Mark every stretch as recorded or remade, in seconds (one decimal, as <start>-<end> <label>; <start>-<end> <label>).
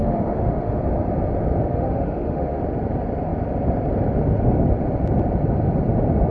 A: 0.0-0.8 remade; 0.8-1.7 recorded; 1.7-2.6 remade; 2.6-6.3 recorded